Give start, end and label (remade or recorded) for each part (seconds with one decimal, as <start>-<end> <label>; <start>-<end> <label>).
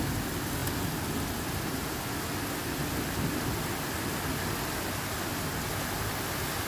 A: 0.0-6.7 recorded